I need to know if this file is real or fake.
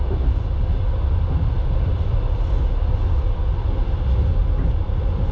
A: real